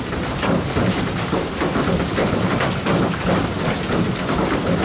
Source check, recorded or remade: recorded